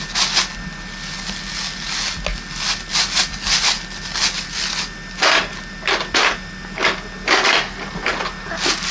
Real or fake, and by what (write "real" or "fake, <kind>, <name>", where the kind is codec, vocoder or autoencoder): real